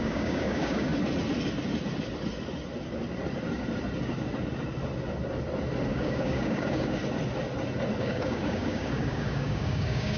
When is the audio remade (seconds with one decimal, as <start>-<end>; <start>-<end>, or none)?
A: 0.0-0.9; 5.9-7.0; 8.0-10.2